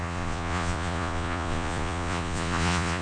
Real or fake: fake